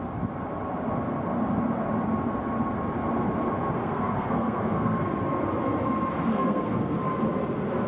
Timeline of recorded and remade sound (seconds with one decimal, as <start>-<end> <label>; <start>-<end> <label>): 0.0-3.8 recorded; 3.8-5.0 remade; 5.0-6.3 recorded; 6.3-7.0 remade; 7.0-7.9 recorded